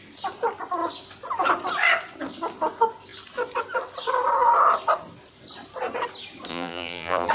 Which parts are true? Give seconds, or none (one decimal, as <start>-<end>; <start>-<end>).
0.0-6.5